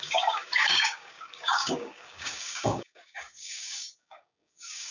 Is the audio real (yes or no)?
no